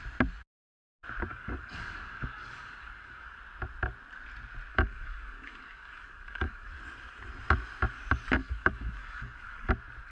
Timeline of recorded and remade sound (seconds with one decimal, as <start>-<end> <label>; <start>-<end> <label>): 0.0-1.3 recorded; 1.3-3.4 remade; 3.4-4.7 recorded; 4.7-6.8 remade; 6.8-8.4 recorded; 8.4-9.7 remade; 9.7-10.1 recorded